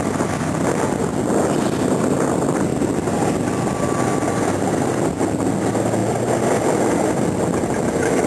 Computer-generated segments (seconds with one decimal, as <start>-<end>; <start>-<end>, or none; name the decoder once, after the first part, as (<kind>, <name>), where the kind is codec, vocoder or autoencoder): none